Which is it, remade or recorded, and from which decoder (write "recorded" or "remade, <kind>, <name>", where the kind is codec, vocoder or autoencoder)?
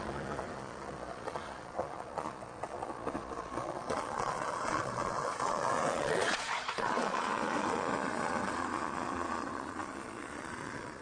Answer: remade, vocoder, Vocos